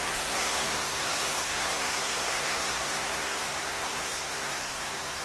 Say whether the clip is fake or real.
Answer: fake